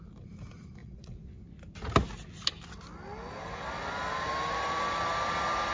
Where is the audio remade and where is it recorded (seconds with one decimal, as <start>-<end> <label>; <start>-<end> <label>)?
0.0-0.8 recorded; 0.8-1.4 remade; 1.4-5.7 recorded